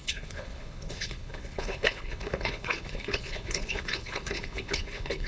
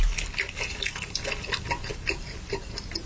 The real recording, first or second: second